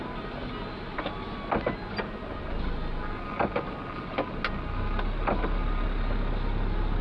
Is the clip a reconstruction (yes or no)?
no